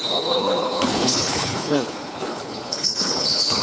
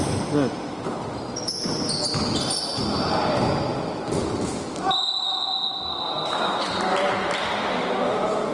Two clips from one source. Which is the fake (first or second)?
first